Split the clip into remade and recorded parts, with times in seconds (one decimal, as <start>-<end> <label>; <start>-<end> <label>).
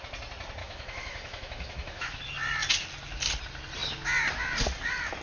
0.0-0.6 recorded; 0.6-2.2 remade; 2.2-5.2 recorded